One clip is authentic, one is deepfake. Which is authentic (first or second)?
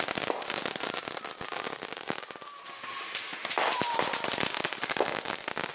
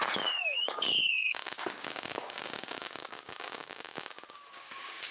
first